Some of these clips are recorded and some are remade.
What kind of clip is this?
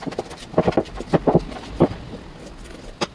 recorded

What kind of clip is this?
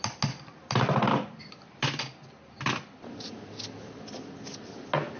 recorded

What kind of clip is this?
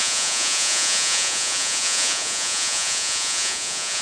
remade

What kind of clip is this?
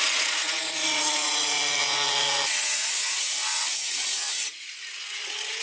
remade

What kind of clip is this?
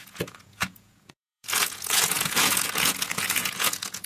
remade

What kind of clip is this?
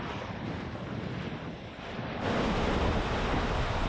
recorded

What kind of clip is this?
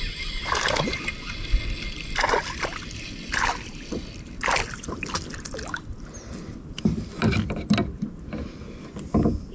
recorded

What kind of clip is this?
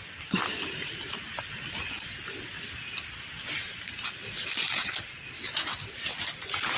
recorded